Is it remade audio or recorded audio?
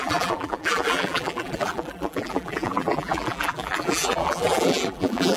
remade